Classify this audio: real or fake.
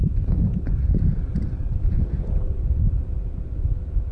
real